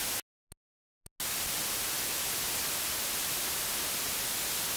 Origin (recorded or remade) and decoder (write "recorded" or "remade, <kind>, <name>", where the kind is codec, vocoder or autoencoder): recorded